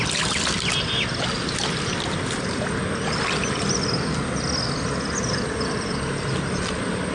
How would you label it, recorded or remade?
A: recorded